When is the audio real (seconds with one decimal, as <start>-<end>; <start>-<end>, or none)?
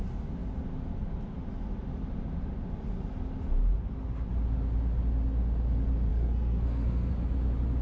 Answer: 0.0-6.1; 7.1-7.8